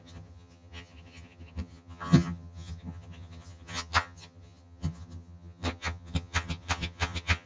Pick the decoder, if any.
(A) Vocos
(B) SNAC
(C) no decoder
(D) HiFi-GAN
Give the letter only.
D